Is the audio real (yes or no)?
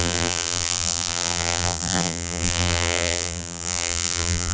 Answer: no